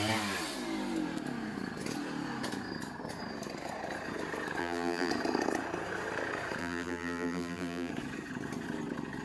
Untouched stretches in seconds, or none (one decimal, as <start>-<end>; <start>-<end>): 0.0-4.6; 5.1-6.6; 7.9-9.2